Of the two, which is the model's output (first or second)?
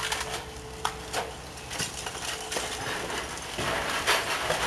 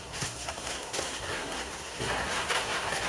second